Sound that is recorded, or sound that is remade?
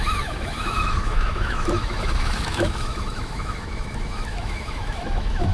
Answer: remade